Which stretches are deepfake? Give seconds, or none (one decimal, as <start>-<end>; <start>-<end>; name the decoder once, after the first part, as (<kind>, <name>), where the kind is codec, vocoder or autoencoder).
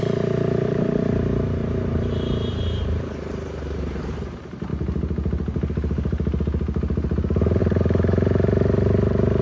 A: 0.0-4.7 (vocoder, BigVGAN v2); 7.6-9.4